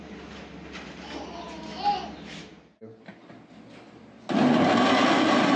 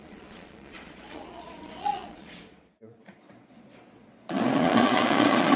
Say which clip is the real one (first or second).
first